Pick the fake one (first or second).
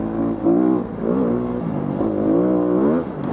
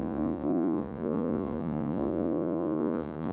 second